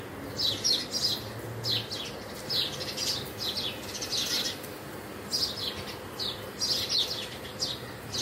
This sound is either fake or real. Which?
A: real